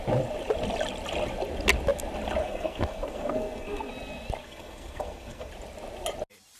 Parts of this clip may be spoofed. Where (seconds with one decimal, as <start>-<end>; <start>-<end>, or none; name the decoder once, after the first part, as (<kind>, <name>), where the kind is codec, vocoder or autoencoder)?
2.4-3.9 (codec, SNAC); 4.4-5.5